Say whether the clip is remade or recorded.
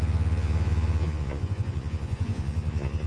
remade